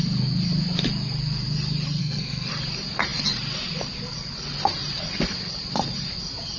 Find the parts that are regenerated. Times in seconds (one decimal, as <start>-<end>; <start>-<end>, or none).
2.0-2.5